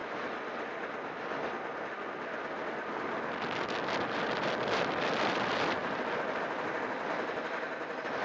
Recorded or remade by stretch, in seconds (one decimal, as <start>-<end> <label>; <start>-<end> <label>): 0.0-4.1 recorded; 4.1-5.8 remade; 5.8-7.2 recorded; 7.2-8.2 remade